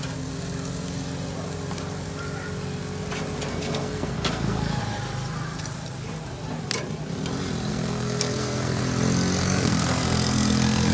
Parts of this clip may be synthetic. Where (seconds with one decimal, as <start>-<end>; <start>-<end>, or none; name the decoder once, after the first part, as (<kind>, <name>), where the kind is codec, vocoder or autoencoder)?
3.5-4.8 (codec, SNAC); 7.7-8.8; 9.4-10.9